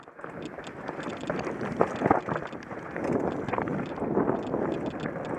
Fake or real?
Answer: real